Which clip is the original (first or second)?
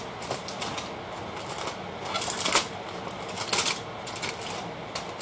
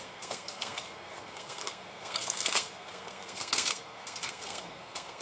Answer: first